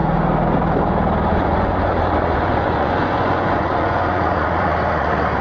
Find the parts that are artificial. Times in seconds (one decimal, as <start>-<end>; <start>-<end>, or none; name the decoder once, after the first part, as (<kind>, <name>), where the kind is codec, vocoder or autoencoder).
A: 1.3-5.4 (vocoder, Vocos)